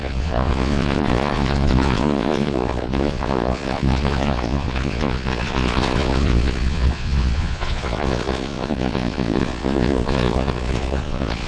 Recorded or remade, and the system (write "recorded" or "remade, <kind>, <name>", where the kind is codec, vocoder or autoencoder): remade, vocoder, Vocos